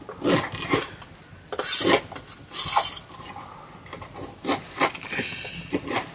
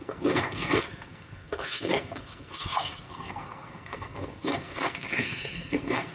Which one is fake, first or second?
second